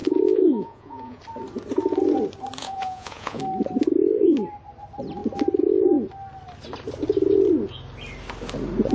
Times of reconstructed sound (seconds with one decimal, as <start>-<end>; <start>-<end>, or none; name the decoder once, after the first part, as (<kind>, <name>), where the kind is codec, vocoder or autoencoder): 0.0-1.2 (vocoder, Vocos); 2.6-3.4